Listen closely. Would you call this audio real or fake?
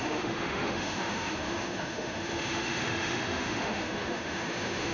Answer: fake